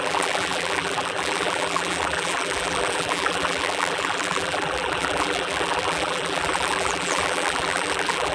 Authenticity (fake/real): fake